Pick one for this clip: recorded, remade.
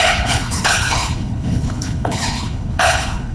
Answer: remade